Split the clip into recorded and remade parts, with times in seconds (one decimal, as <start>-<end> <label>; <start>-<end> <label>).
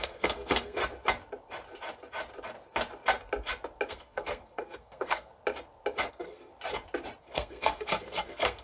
0.0-0.8 remade; 0.8-3.9 recorded; 3.9-5.3 remade; 5.3-6.1 recorded; 6.1-6.5 remade; 6.5-7.2 recorded; 7.2-8.6 remade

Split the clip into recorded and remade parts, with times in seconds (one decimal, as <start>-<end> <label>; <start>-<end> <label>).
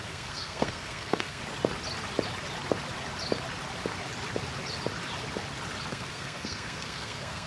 0.0-1.4 remade; 1.4-5.9 recorded; 5.9-7.5 remade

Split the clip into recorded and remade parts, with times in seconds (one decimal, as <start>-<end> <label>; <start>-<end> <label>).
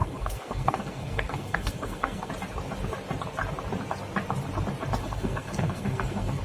0.0-2.3 remade; 2.3-5.0 recorded; 5.0-6.4 remade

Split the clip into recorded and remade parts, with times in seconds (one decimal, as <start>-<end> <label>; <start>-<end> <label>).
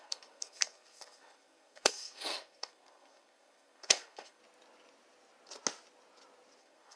0.0-4.4 remade; 4.4-6.6 recorded; 6.6-7.0 remade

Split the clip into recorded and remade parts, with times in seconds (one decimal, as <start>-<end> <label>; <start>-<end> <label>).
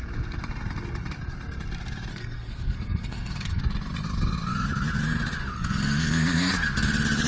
0.0-2.1 recorded; 2.1-3.6 remade; 3.6-5.4 recorded; 5.4-6.5 remade; 6.5-7.3 recorded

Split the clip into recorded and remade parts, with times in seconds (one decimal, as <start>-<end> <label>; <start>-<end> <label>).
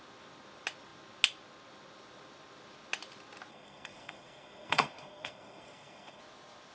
0.0-3.5 recorded; 3.5-6.2 remade; 6.2-6.7 recorded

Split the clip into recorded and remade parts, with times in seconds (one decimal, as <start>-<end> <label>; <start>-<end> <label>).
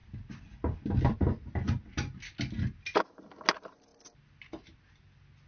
0.0-5.5 recorded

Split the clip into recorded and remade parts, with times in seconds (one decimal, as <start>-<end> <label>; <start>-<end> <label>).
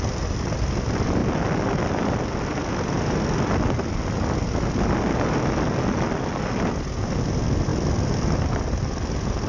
0.0-9.5 recorded